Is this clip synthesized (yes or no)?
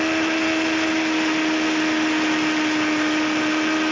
no